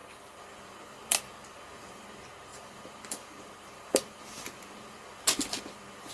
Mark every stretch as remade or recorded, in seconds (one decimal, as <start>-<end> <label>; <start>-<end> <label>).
0.0-1.1 recorded; 1.1-2.0 remade; 2.0-2.5 recorded; 2.5-4.2 remade; 4.2-6.1 recorded